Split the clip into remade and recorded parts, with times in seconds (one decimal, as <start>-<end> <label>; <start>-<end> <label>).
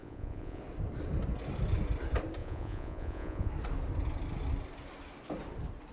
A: 0.0-0.6 remade; 0.6-2.4 recorded; 2.4-3.5 remade; 3.5-5.9 recorded